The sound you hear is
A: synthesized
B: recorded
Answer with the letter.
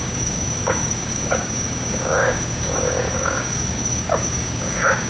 A